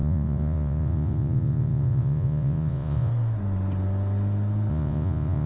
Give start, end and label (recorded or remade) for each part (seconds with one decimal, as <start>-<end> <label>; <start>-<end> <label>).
0.0-3.1 remade; 3.1-4.7 recorded; 4.7-5.5 remade